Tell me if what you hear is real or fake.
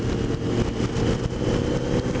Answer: real